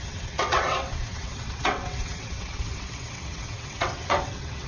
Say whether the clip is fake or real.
fake